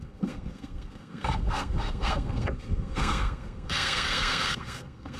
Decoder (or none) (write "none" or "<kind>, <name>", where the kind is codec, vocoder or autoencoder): codec, SNAC